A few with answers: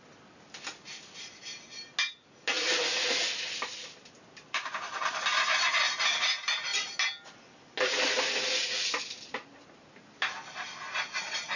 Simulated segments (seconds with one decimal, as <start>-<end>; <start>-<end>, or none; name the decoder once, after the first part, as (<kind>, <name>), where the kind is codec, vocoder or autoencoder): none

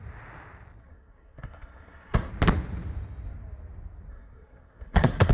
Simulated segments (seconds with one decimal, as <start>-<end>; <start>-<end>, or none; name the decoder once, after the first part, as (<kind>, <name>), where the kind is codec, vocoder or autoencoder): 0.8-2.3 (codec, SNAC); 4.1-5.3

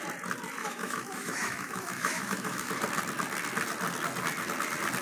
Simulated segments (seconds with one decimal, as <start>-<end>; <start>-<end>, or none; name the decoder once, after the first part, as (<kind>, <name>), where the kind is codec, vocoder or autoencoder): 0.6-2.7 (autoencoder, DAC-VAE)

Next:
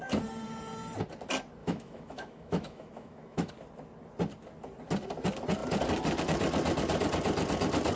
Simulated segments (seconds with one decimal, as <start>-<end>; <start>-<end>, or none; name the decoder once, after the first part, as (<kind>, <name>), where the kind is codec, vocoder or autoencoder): 1.6-3.5 (autoencoder, DAC-VAE)

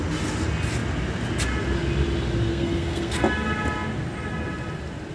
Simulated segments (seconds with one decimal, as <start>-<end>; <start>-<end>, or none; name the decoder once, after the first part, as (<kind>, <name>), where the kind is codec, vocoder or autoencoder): 2.5-3.2 (codec, SNAC)

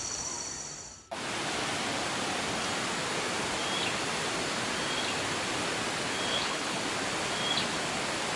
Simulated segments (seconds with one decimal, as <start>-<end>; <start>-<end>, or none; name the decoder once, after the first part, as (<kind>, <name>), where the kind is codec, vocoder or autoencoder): 6.3-6.8 (codec, HILCodec)